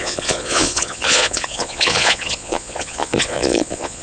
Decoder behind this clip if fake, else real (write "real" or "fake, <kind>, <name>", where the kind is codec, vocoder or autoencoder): fake, vocoder, Vocos